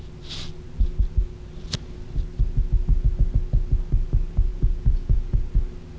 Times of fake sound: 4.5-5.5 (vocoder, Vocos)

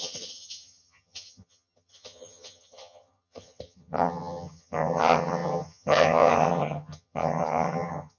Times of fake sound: 0.0-8.2 (vocoder, HiFi-GAN)

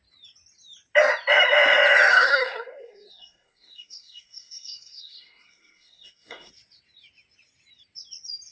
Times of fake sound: 2.1-6.5 (codec, SNAC)